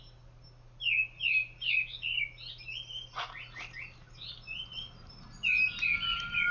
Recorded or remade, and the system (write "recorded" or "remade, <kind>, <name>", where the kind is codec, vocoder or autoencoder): recorded